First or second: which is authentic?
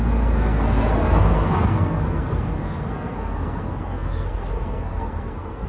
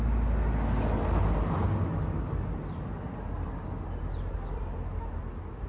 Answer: second